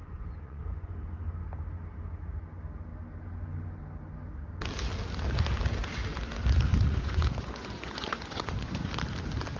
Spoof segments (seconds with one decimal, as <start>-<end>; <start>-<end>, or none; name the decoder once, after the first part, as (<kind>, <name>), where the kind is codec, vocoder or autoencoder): 0.0-1.1 (vocoder, Vocos); 6.7-8.9